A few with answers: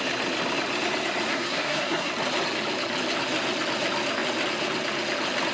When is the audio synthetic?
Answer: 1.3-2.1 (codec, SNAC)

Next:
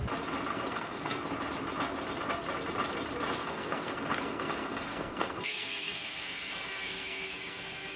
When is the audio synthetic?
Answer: 0.5-1.3 (codec, SNAC); 3.4-8.0